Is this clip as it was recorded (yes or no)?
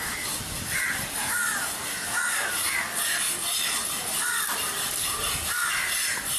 yes